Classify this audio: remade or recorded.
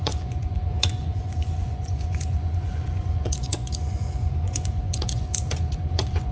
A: remade